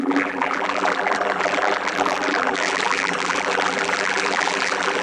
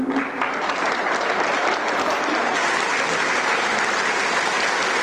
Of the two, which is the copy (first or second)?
first